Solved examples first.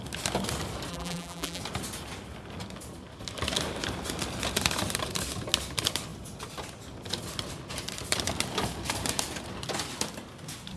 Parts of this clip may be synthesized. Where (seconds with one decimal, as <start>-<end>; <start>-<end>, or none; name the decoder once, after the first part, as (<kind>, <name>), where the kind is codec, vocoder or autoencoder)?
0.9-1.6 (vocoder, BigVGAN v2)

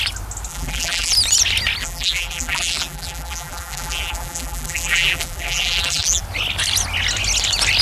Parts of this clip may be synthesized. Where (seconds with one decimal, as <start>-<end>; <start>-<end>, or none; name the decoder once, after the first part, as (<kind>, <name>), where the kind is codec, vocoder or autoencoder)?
0.5-1.1 (vocoder, BigVGAN v2); 1.8-6.2

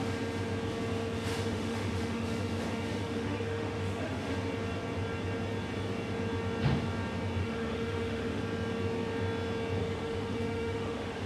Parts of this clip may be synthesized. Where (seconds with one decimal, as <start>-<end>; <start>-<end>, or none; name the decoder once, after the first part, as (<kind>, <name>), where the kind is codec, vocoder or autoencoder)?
1.3-4.3 (autoencoder, DAC-VAE); 7.4-8.4; 9.8-11.3